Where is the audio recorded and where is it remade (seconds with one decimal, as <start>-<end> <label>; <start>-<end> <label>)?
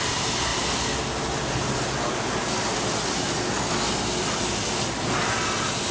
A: 0.0-5.9 recorded